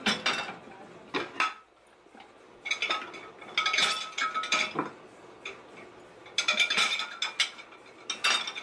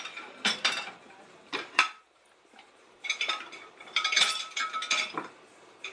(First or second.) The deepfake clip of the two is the second